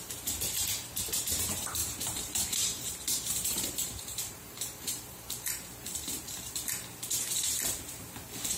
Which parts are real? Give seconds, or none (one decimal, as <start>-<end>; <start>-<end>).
0.0-1.8; 6.5-8.6